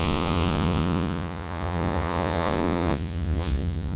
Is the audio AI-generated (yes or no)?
yes